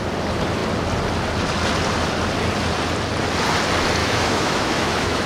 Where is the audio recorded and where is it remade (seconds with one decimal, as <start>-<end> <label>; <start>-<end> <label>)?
0.0-4.0 recorded; 4.0-5.3 remade